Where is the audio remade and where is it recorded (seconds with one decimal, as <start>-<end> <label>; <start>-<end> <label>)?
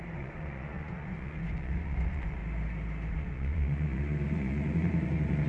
0.0-2.4 remade; 2.4-3.1 recorded; 3.1-5.5 remade